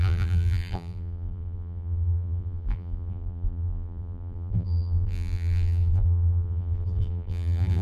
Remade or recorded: remade